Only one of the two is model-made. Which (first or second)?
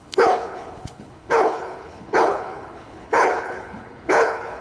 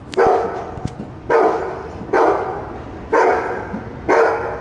first